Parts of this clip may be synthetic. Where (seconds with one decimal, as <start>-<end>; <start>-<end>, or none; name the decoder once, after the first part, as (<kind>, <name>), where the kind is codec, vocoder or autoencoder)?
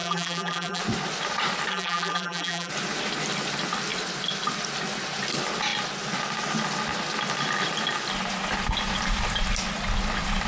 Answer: 0.0-0.8 (vocoder, BigVGAN v2); 1.7-2.7